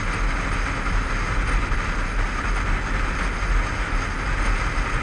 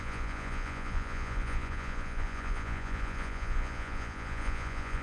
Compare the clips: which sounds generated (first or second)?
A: second